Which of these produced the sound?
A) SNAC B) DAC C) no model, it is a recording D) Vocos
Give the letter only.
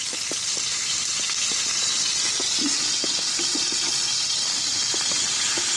C